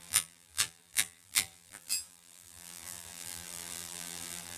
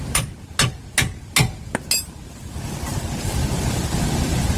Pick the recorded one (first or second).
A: second